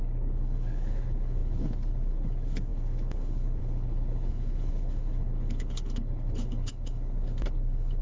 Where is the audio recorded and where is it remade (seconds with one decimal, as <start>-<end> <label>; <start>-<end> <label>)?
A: 0.0-8.0 remade